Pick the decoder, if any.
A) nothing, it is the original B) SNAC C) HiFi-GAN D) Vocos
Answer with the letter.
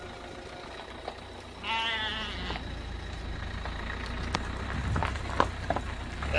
A